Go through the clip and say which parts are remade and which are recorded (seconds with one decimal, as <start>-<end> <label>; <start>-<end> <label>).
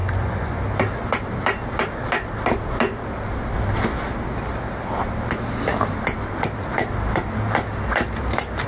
0.0-0.6 remade; 0.6-8.7 recorded